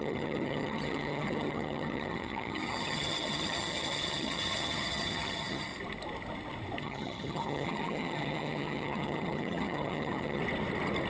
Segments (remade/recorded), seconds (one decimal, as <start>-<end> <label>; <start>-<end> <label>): 0.0-5.7 remade; 5.7-6.8 recorded; 6.8-10.4 remade; 10.4-11.1 recorded